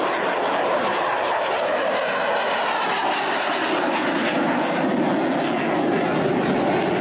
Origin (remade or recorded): recorded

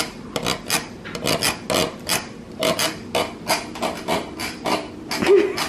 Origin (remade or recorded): recorded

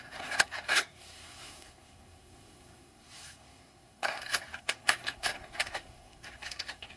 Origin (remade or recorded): remade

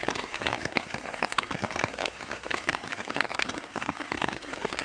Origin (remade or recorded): remade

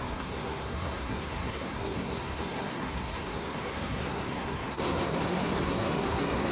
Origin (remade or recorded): remade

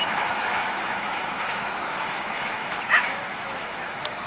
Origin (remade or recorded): remade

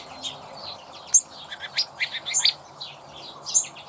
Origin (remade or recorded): recorded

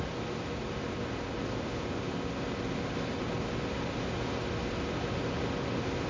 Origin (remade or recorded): recorded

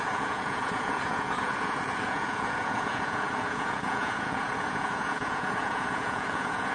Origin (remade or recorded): remade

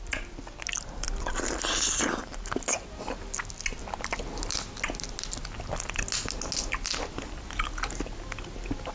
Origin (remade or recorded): recorded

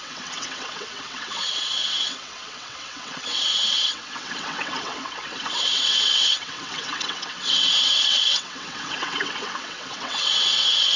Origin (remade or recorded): remade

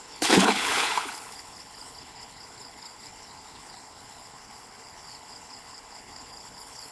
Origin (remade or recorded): remade